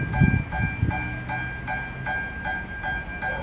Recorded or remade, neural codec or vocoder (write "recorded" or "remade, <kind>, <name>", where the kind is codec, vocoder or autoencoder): recorded